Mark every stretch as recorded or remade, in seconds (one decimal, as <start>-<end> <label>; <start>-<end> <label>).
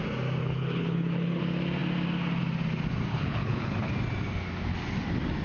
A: 0.0-0.4 recorded; 0.4-1.4 remade; 1.4-3.1 recorded; 3.1-3.9 remade; 3.9-5.4 recorded